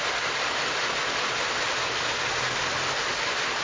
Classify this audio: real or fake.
real